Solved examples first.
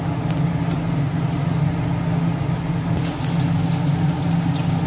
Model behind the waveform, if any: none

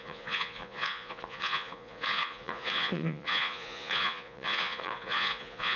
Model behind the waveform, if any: vocoder, Vocos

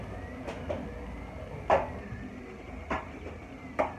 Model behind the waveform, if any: none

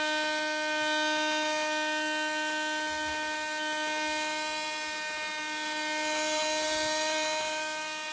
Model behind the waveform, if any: none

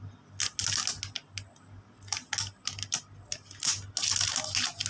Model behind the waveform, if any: none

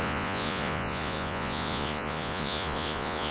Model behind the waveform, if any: vocoder, Vocos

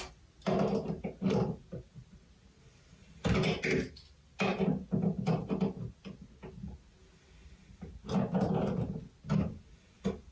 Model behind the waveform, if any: none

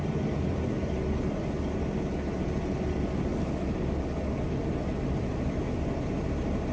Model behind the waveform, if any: none